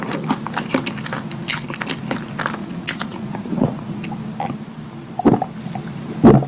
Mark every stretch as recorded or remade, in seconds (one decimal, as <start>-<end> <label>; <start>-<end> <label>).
0.0-2.6 recorded; 2.6-4.1 remade; 4.1-6.5 recorded